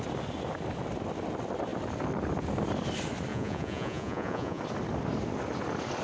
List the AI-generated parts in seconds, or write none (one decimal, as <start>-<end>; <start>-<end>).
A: 3.3-4.6